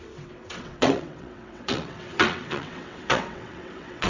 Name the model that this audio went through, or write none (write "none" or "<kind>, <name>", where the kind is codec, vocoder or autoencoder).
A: vocoder, WaveNeXt